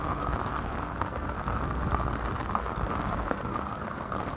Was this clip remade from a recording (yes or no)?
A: yes